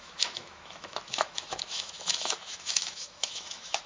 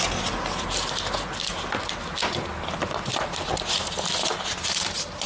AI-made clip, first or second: first